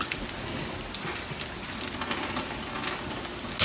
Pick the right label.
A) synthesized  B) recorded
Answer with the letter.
B